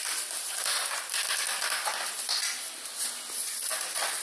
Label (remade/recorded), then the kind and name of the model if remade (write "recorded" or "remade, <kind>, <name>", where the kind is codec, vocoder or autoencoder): recorded